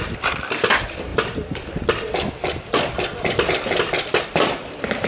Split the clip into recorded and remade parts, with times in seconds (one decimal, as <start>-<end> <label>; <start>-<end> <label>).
0.0-5.1 remade